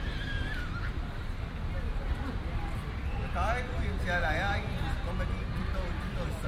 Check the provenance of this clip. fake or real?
real